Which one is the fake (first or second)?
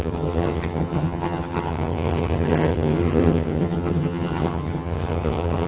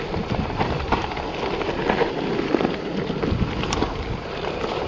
first